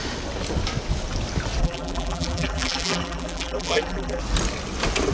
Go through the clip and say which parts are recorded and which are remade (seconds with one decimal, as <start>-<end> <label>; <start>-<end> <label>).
0.0-1.6 recorded; 1.6-4.2 remade; 4.2-5.1 recorded